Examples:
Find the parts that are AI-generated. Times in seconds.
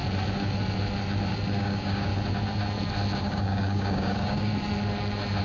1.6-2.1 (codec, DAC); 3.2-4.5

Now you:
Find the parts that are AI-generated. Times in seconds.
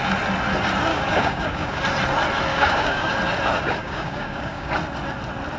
0.9-1.8 (codec, DAC); 2.5-3.1; 3.8-4.7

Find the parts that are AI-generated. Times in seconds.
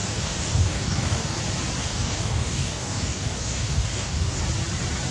0.0-1.4 (codec, DAC); 1.8-4.4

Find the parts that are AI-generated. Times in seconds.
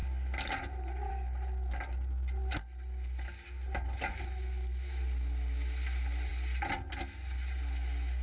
none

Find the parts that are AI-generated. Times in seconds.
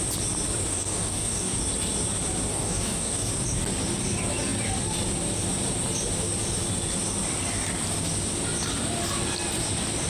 0.7-1.6 (codec, DAC); 2.5-3.3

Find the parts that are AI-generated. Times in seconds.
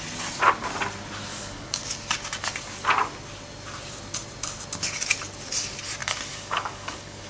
1.3-1.9 (codec, DAC); 6.0-7.3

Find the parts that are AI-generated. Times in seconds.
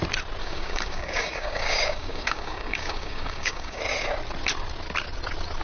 0.4-3.8 (codec, DAC)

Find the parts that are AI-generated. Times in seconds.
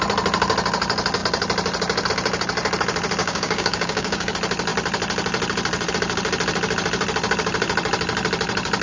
3.2-4.3 (codec, DAC)